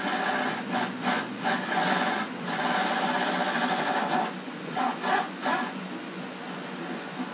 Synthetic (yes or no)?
yes